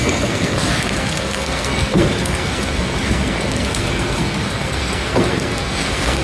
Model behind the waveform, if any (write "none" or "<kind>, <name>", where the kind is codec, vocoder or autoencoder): codec, SNAC